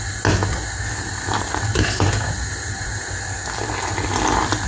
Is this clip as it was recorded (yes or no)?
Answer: yes